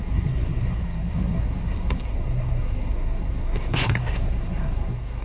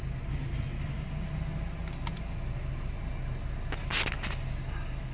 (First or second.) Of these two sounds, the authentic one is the second